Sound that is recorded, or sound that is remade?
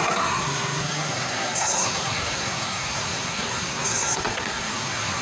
remade